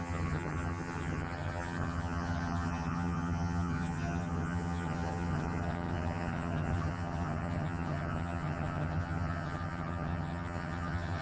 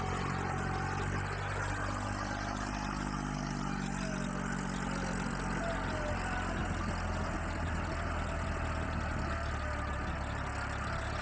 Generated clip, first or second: first